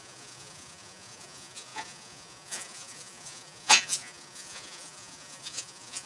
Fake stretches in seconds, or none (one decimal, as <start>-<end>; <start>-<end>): 0.0-6.1